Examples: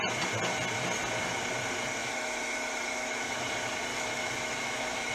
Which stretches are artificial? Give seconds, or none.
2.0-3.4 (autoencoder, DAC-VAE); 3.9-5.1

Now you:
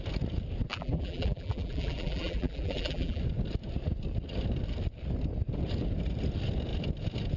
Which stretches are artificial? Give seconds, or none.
0.7-3.2 (vocoder, BigVGAN v2)

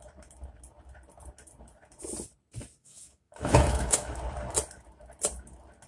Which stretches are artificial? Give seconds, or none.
2.8-4.2 (autoencoder, DAC-VAE)

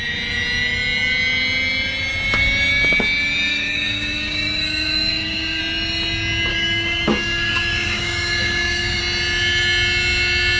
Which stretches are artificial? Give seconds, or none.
3.5-5.6 (codec, DAC); 6.5-9.0

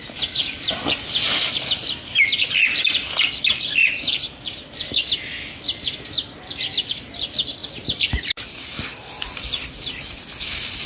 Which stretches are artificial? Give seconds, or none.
none